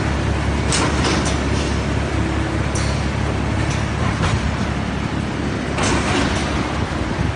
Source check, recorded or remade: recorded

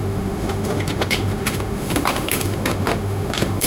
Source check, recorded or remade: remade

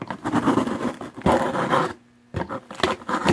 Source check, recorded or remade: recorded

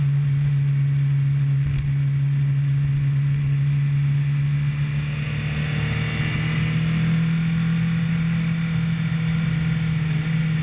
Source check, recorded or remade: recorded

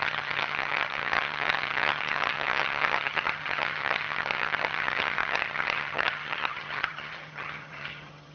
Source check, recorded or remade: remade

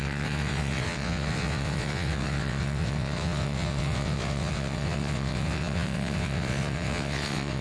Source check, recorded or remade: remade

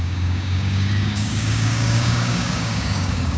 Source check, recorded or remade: remade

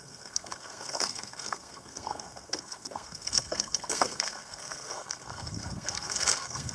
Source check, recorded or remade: remade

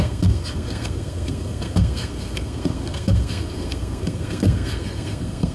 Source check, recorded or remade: remade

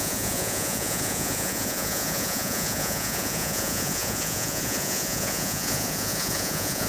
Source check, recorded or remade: remade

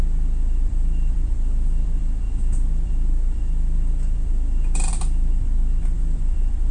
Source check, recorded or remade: remade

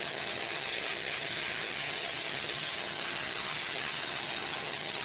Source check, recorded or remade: remade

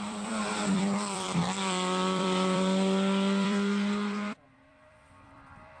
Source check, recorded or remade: remade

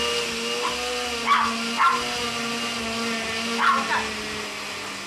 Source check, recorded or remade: recorded